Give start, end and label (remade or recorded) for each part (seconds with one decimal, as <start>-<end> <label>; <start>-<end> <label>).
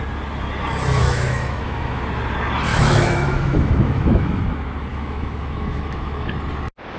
0.0-1.0 recorded; 1.0-2.0 remade; 2.0-2.7 recorded; 2.7-4.4 remade; 4.4-4.9 recorded; 4.9-6.3 remade; 6.3-7.0 recorded